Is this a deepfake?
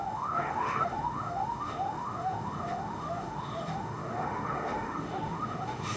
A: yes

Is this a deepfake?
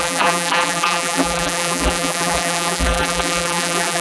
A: yes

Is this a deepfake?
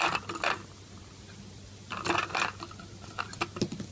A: no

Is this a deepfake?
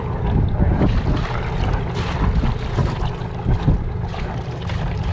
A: no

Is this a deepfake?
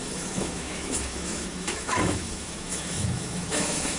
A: yes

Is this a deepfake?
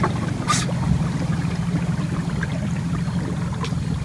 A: no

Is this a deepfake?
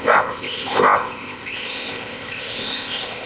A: yes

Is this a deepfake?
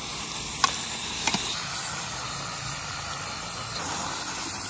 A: no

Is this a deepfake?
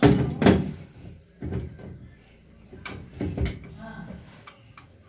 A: yes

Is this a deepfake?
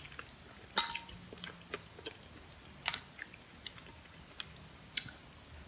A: no